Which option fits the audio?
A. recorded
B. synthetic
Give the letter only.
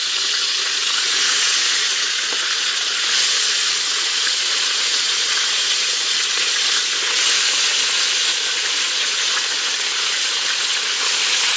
B